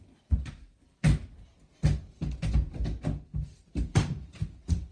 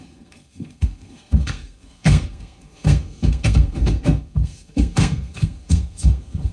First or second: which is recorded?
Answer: first